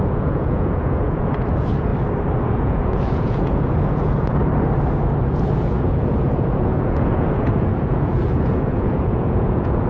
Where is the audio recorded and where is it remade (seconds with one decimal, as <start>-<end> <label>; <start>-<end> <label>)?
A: 0.0-1.9 remade; 1.9-2.5 recorded; 2.5-4.4 remade; 4.4-5.2 recorded; 5.2-9.9 remade